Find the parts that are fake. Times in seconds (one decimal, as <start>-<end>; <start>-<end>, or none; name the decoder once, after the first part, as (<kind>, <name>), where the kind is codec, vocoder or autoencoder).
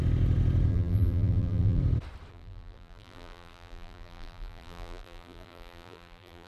0.7-1.8 (vocoder, BigVGAN v2); 2.3-6.5